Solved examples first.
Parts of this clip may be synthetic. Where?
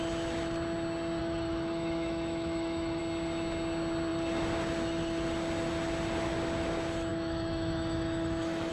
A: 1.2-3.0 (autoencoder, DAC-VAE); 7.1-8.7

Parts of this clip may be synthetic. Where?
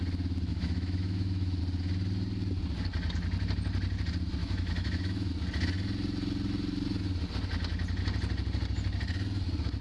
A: 0.5-1.6 (autoencoder, DAC-VAE); 4.4-5.3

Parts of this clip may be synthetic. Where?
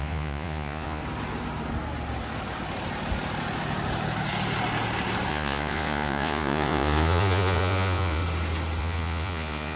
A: 0.0-1.0 (vocoder, Vocos); 5.3-8.2; 8.8-9.8